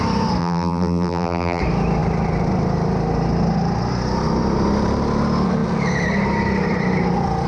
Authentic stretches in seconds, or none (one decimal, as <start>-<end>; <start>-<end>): 0.0-0.4; 1.6-7.5